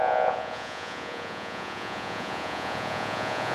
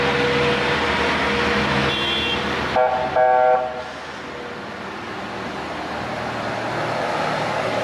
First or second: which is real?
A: second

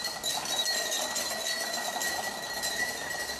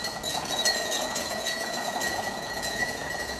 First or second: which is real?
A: first